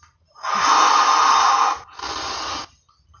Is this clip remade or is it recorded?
recorded